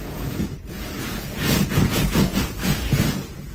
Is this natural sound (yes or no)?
no